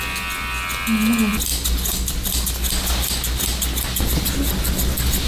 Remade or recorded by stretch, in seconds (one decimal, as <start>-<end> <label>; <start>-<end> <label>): 0.0-5.3 recorded